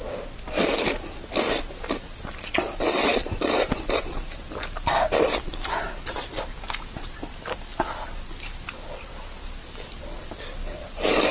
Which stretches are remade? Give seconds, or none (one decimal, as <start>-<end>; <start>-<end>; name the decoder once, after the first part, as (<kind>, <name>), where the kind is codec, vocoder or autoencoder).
3.2-5.8 (vocoder, BigVGAN v2); 7.7-8.2